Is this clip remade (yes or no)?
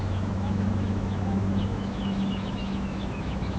yes